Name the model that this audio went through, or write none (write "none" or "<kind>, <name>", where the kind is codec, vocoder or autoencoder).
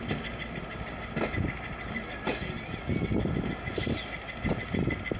none